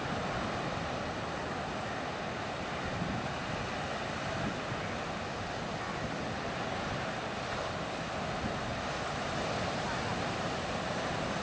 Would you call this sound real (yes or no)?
yes